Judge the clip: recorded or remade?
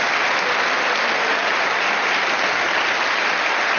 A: recorded